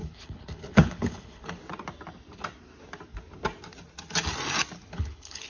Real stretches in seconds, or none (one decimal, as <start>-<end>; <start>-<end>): 1.6-4.9